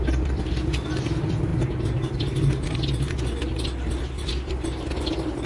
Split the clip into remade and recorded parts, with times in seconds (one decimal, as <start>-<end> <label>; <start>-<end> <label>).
0.0-1.5 remade; 1.5-4.0 recorded; 4.0-5.5 remade